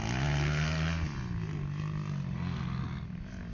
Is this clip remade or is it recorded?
recorded